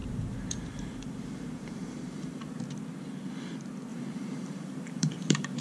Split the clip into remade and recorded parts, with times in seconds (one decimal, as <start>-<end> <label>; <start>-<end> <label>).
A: 0.0-2.6 remade; 2.6-3.9 recorded; 3.9-5.6 remade